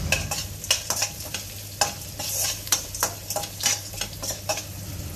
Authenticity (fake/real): real